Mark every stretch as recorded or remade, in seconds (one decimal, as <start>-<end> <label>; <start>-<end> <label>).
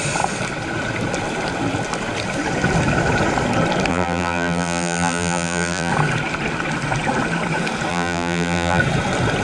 0.0-3.9 recorded; 3.9-5.9 remade; 5.9-7.9 recorded; 7.9-8.8 remade; 8.8-9.4 recorded